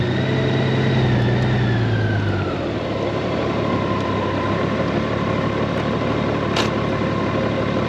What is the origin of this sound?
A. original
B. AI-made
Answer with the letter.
A